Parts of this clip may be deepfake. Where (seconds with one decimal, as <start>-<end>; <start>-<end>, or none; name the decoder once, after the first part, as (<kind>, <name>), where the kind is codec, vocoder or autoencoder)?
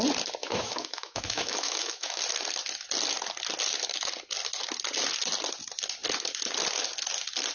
0.4-2.2 (autoencoder, DAC-VAE)